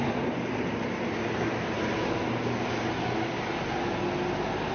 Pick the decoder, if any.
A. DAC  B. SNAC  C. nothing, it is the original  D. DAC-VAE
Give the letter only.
C